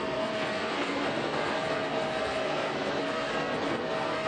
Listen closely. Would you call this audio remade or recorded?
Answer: remade